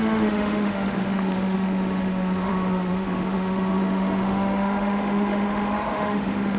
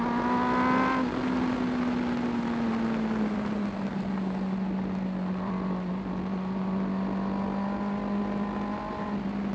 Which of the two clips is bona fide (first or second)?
second